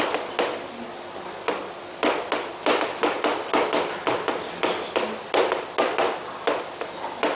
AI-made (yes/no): no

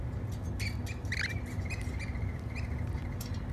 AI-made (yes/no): no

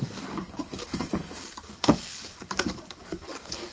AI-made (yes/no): yes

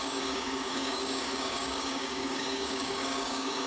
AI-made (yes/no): yes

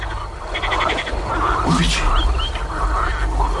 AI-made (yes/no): no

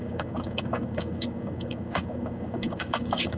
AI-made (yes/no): yes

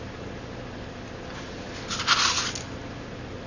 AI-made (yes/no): no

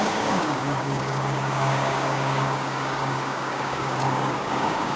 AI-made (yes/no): yes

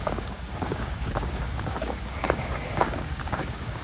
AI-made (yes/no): yes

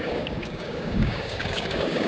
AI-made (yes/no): yes